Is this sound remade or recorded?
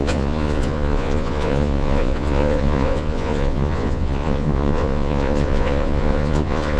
remade